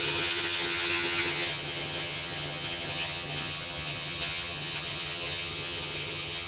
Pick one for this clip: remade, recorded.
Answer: remade